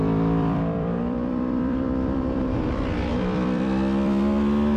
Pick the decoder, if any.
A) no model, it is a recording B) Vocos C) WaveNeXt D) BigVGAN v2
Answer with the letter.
D